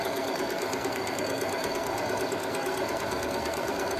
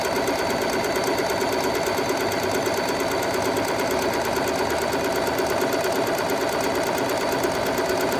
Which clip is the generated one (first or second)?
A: first